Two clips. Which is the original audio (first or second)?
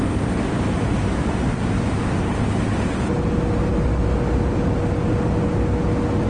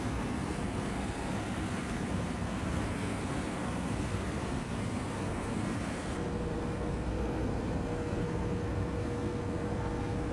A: first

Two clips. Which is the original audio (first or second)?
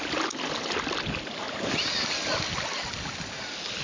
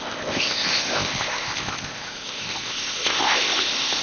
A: first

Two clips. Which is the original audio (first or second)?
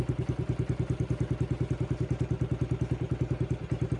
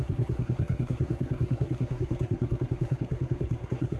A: first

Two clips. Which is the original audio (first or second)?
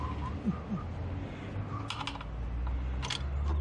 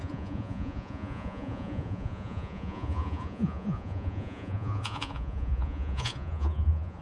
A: first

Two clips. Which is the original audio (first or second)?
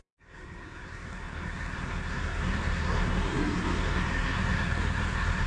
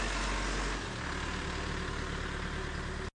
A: second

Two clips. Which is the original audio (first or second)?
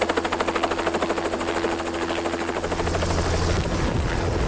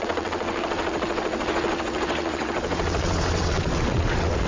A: first